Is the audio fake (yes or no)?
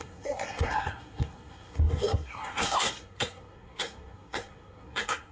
yes